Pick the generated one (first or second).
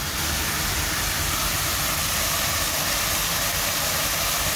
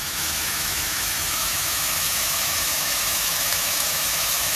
second